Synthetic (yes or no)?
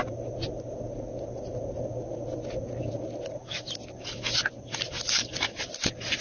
no